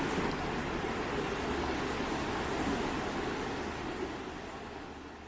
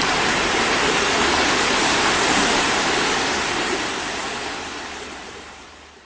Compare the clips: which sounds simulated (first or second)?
second